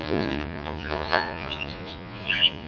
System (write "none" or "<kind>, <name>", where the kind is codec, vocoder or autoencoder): vocoder, Vocos